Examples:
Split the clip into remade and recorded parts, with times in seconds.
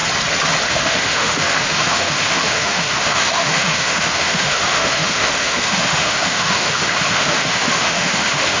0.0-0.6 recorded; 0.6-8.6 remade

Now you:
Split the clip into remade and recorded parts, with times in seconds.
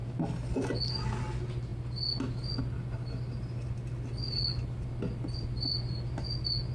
0.0-6.7 recorded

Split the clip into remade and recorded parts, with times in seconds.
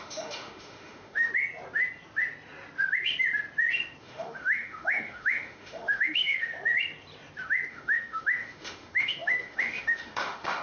0.0-1.3 remade; 1.3-4.0 recorded; 4.0-6.5 remade; 6.5-7.7 recorded; 7.7-10.6 remade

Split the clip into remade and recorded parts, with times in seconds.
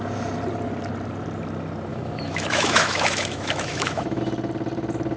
0.0-1.9 recorded; 1.9-4.2 remade; 4.2-5.2 recorded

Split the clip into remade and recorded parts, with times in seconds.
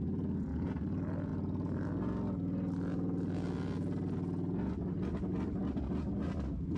0.0-6.8 recorded